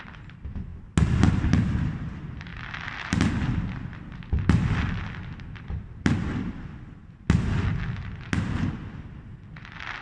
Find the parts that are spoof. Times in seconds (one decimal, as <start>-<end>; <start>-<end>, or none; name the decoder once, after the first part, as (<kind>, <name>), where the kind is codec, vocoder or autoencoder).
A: 0.0-0.7 (vocoder, BigVGAN v2); 1.4-7.0